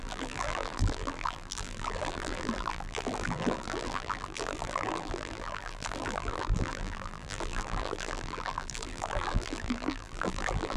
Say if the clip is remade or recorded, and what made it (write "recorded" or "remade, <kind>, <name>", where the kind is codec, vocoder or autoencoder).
remade, vocoder, BigVGAN v2